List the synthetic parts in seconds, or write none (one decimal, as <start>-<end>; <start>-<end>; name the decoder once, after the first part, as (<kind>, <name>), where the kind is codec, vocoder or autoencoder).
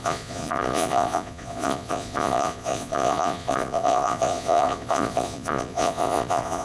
0.0-6.6 (vocoder, Vocos)